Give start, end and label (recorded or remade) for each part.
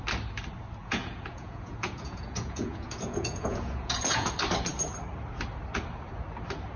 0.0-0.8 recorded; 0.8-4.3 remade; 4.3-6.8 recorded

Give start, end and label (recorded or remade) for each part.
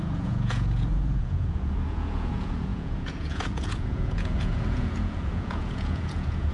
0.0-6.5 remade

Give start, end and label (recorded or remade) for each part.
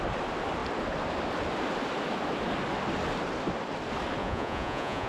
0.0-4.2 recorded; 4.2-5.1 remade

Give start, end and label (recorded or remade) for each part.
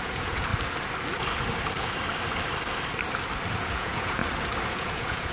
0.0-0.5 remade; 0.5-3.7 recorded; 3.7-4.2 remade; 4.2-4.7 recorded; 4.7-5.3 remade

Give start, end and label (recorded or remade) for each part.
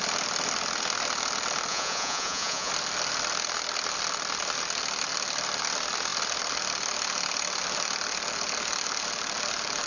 0.0-1.7 recorded; 1.7-2.7 remade; 2.7-9.9 recorded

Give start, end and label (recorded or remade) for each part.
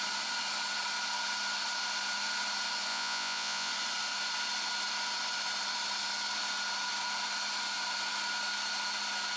0.0-2.9 recorded; 2.9-3.7 remade; 3.7-9.4 recorded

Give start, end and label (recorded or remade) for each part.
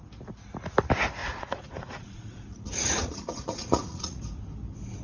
0.0-1.2 recorded; 1.2-4.2 remade; 4.2-5.0 recorded